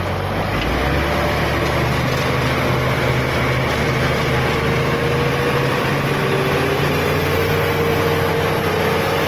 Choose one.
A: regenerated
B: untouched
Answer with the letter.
B